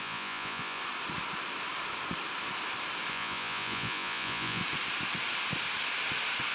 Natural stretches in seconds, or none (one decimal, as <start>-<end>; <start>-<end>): 0.8-3.1; 4.6-6.5